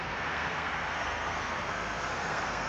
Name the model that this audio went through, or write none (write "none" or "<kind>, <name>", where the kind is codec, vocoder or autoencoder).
codec, SNAC